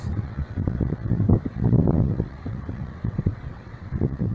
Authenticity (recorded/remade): remade